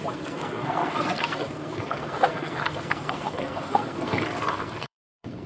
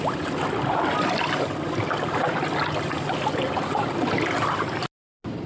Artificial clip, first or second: first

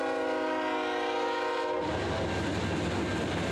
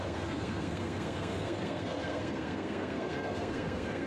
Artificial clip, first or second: second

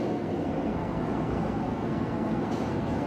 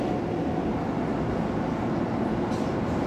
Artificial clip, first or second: first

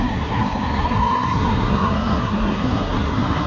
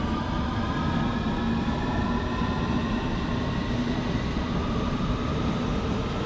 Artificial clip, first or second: first